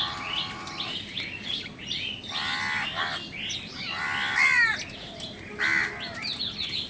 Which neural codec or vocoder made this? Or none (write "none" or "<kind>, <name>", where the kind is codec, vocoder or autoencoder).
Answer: none